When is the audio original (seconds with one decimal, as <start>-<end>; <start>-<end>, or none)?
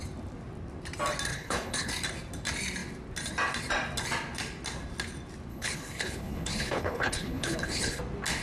0.0-1.3; 1.9-5.5; 8.0-8.4